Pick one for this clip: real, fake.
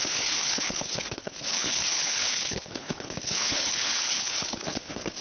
fake